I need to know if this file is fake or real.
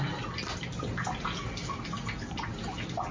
real